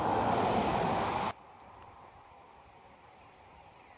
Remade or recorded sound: remade